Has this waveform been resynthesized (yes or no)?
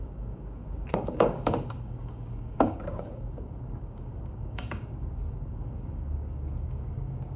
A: yes